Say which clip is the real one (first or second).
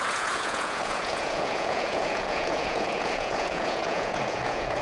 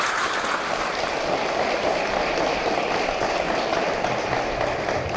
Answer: second